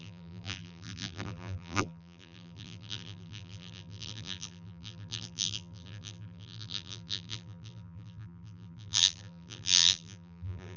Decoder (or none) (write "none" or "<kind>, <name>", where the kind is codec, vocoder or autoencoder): vocoder, BigVGAN v2